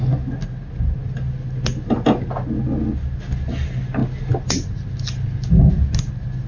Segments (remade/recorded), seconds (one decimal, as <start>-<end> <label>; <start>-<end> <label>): 0.0-6.5 recorded